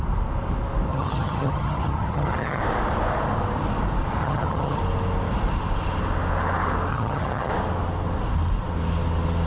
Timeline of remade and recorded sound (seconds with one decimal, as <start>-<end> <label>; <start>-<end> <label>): 0.0-0.9 recorded; 0.9-2.6 remade; 2.6-4.2 recorded; 4.2-4.8 remade; 4.8-6.9 recorded; 6.9-7.5 remade; 7.5-9.5 recorded